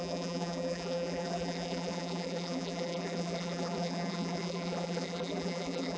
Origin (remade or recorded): remade